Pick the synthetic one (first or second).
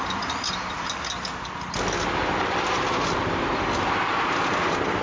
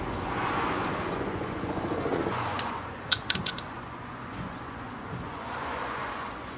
second